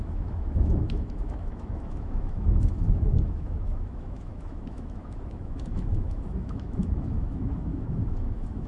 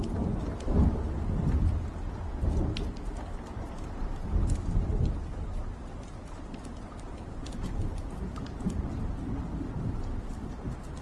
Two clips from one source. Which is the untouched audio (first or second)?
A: second